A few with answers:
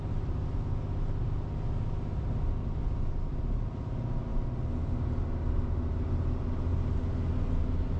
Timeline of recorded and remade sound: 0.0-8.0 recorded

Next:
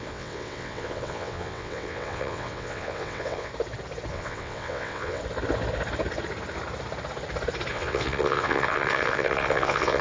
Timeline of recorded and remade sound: 0.0-3.5 remade; 3.5-4.1 recorded; 4.1-5.2 remade; 5.2-7.7 recorded; 7.7-10.0 remade

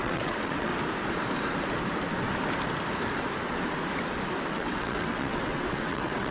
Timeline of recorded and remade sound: 0.0-0.7 remade; 0.7-4.5 recorded; 4.5-6.3 remade

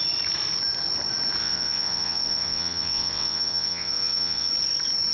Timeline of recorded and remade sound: 0.0-1.4 recorded; 1.4-4.5 remade; 4.5-5.1 recorded

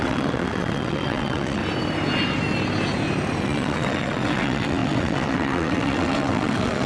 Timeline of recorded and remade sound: 0.0-1.6 remade; 1.6-3.4 recorded; 3.4-6.9 remade

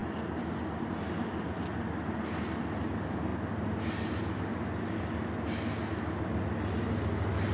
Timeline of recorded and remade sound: 0.0-7.5 recorded